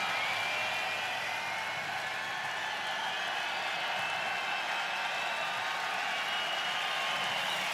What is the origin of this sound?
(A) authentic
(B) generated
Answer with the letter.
A